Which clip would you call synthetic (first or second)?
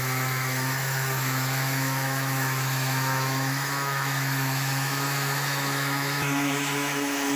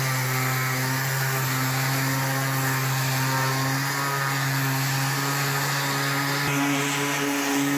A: first